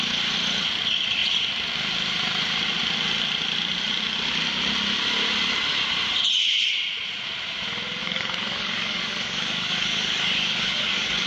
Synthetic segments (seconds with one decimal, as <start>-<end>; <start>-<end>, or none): 8.0-11.3